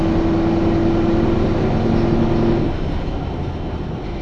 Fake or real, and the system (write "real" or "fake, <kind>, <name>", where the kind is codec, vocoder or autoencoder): real